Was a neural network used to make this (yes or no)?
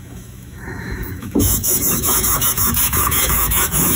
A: yes